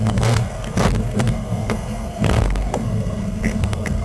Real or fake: fake